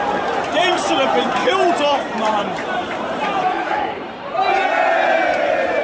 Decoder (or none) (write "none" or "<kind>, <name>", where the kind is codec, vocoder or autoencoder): vocoder, BigVGAN v2